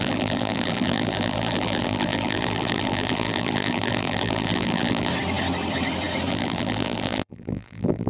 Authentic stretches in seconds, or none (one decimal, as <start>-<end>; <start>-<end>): 5.1-6.3